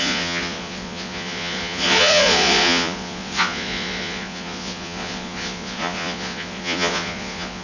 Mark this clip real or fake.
fake